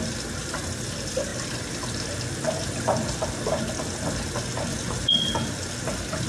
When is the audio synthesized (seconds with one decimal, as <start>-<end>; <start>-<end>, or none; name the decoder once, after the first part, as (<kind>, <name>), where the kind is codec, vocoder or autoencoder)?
none